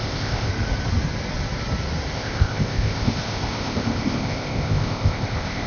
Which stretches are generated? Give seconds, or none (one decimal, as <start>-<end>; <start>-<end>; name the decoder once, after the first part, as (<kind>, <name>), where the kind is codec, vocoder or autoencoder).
0.0-0.5 (codec, ZipCodec); 2.1-5.7